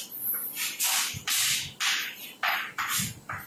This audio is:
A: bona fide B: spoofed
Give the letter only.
A